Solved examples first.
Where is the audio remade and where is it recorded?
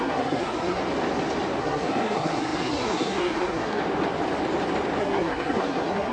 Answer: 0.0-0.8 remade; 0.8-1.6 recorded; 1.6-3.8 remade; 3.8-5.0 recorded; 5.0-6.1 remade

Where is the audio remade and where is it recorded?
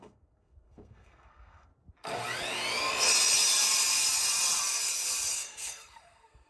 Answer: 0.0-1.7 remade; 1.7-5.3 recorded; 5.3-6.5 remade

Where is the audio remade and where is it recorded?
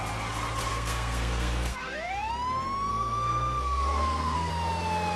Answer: 0.0-0.7 recorded; 0.7-2.3 remade; 2.3-2.9 recorded; 2.9-4.5 remade; 4.5-5.2 recorded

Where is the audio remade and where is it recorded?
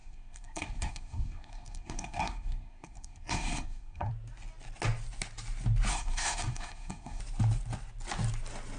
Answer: 0.0-4.1 remade; 4.1-5.9 recorded; 5.9-7.2 remade; 7.2-8.8 recorded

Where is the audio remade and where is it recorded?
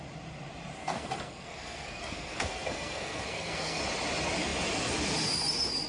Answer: 0.0-0.8 recorded; 0.8-3.8 remade; 3.8-5.9 recorded